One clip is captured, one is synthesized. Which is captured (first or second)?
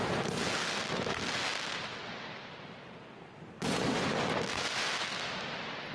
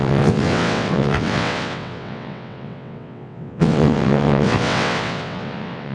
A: first